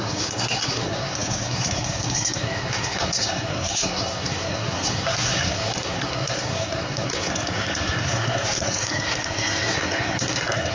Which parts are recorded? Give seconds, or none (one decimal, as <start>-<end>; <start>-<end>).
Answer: none